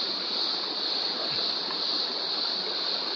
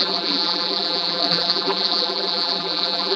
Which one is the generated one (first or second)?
second